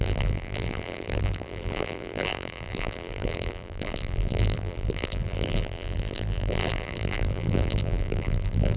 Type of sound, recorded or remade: remade